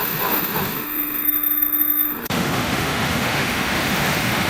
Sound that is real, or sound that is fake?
fake